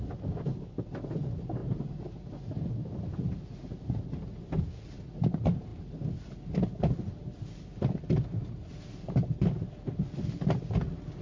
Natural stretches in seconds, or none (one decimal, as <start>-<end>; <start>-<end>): 0.0-1.6; 2.3-11.2